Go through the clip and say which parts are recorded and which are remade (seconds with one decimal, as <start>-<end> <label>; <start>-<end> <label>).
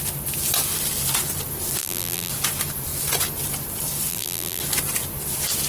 0.0-1.8 recorded; 1.8-2.3 remade; 2.3-4.1 recorded; 4.1-4.6 remade; 4.6-5.7 recorded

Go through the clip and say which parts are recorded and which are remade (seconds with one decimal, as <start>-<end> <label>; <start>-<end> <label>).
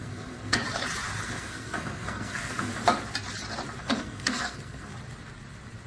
0.0-0.6 remade; 0.6-1.2 recorded; 1.2-2.7 remade; 2.7-3.8 recorded; 3.8-4.9 remade; 4.9-5.9 recorded